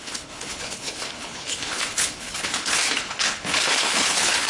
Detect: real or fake fake